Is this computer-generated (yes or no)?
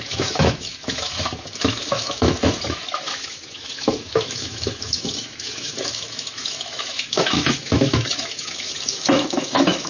yes